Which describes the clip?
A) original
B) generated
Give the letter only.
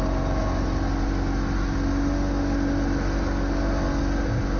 A